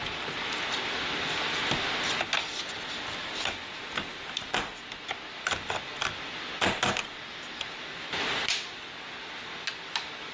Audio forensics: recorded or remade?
recorded